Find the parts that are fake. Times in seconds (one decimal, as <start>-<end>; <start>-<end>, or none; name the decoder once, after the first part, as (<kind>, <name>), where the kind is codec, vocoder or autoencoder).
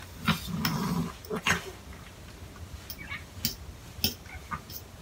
none